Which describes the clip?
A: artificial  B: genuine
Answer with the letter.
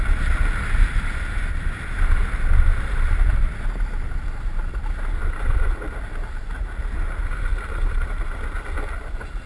B